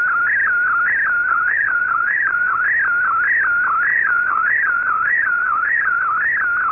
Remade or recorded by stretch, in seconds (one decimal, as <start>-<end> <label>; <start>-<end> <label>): 0.0-1.2 recorded; 1.2-2.6 remade; 2.6-3.9 recorded; 3.9-6.0 remade; 6.0-6.7 recorded